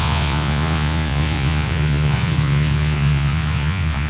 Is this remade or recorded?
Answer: remade